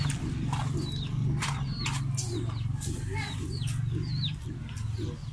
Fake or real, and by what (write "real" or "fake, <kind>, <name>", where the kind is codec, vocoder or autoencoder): real